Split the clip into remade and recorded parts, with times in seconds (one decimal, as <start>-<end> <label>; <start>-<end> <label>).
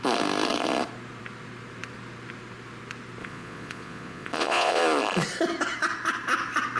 0.0-3.2 recorded; 3.2-4.8 remade; 4.8-6.8 recorded